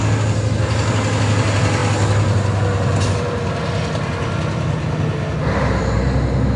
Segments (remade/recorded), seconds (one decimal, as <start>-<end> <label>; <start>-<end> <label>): 0.0-6.6 recorded